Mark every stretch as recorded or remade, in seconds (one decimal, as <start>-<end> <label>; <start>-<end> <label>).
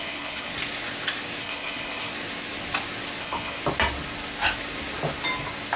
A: 0.0-0.5 remade; 0.5-1.4 recorded; 1.4-2.1 remade; 2.1-3.2 recorded; 3.2-3.6 remade; 3.6-5.8 recorded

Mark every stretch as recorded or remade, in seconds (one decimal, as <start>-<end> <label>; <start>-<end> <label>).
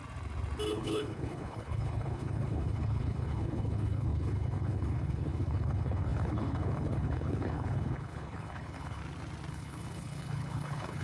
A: 0.0-0.7 recorded; 0.7-9.0 remade; 9.0-9.5 recorded; 9.5-11.0 remade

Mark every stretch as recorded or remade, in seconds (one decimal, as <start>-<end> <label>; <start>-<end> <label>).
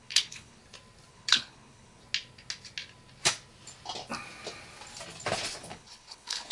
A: 0.0-0.6 remade; 0.6-1.1 recorded; 1.1-2.0 remade; 2.0-5.6 recorded; 5.6-6.5 remade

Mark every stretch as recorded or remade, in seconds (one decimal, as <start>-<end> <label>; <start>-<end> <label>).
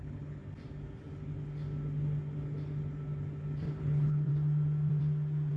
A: 0.0-0.4 remade; 0.4-3.8 recorded; 3.8-4.3 remade; 4.3-5.6 recorded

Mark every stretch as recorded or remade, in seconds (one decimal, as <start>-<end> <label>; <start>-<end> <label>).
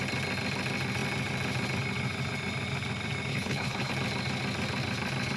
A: 0.0-3.3 recorded; 3.3-3.9 remade; 3.9-5.4 recorded